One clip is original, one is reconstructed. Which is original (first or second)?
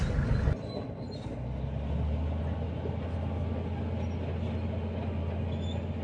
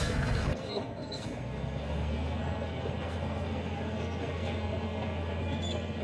first